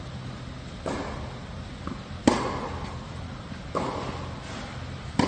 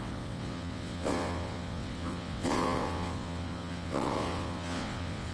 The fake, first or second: second